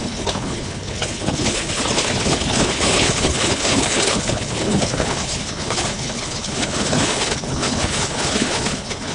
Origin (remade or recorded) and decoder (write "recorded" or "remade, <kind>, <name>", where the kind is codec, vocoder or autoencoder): remade, codec, HILCodec